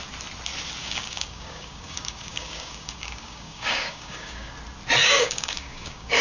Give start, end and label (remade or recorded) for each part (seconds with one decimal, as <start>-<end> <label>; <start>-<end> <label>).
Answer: 0.0-0.8 recorded; 0.8-4.5 remade; 4.5-5.0 recorded; 5.0-6.2 remade